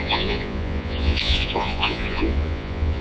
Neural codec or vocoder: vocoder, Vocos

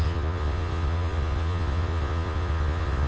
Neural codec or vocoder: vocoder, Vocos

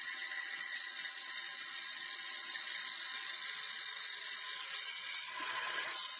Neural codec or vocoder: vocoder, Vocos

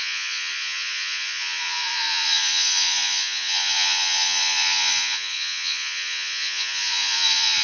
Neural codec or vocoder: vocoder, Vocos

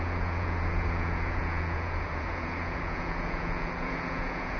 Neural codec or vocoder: vocoder, Vocos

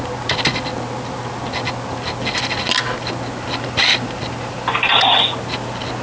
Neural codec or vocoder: none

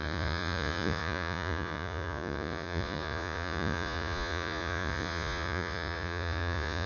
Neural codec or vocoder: vocoder, Vocos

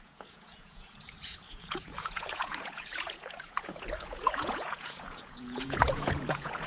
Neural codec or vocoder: vocoder, Vocos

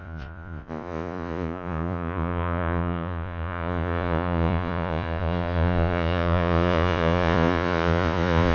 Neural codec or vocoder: vocoder, Vocos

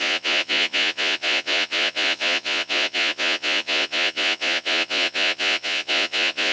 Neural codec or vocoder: vocoder, Vocos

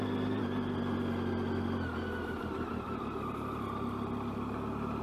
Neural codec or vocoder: none